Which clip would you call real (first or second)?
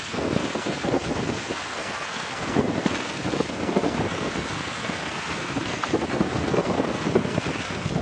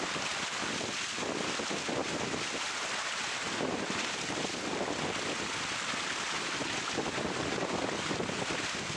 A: second